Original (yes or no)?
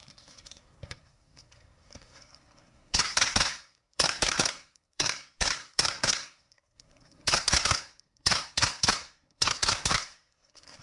no